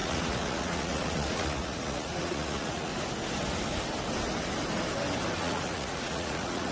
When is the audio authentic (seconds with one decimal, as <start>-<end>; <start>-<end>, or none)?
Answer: 2.9-5.4